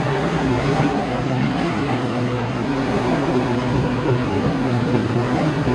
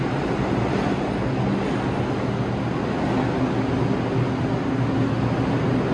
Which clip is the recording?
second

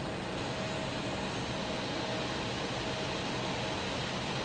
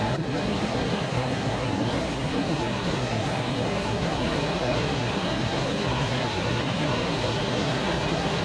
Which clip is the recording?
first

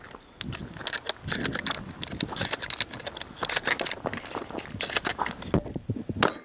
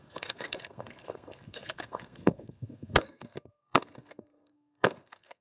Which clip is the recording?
first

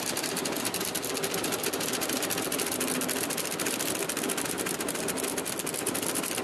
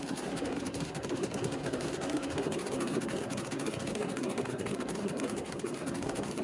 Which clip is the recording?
first